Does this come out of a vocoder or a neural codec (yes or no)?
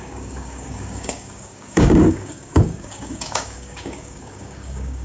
yes